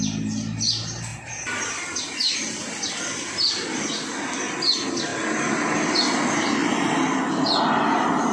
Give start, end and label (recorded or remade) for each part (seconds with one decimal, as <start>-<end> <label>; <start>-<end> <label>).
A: 0.0-8.3 recorded